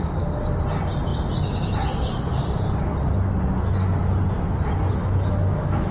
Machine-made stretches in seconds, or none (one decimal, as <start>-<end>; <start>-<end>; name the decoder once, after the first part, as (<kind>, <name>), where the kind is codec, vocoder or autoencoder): 5.0-5.9 (autoencoder, DAC-VAE)